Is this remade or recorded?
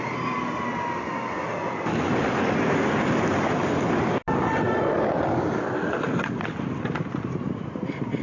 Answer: recorded